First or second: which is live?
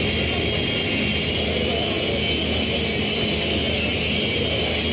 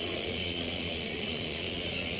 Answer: first